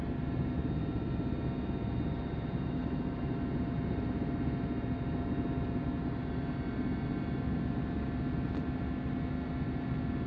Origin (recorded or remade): recorded